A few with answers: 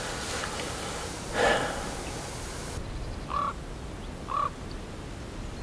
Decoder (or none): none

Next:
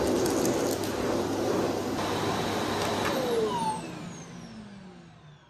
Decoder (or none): none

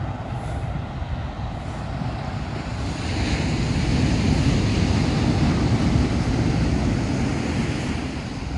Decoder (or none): none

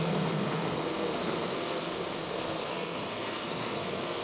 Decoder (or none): codec, SNAC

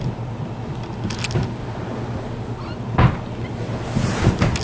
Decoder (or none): none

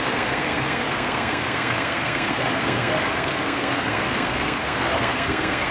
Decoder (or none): codec, SNAC